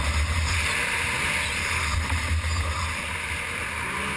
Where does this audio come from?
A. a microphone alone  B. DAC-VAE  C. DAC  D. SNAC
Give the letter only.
A